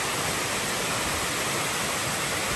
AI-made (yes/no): no